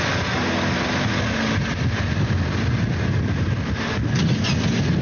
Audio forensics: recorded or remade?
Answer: recorded